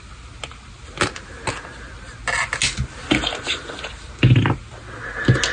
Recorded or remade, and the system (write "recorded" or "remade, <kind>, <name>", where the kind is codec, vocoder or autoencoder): recorded